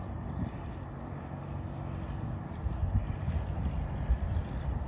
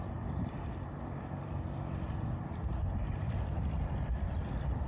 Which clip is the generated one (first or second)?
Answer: second